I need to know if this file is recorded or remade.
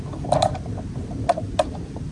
recorded